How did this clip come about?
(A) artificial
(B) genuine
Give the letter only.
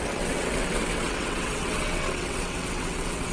A